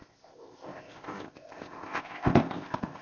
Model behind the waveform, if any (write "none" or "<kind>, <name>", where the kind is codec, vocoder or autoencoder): codec, ZipCodec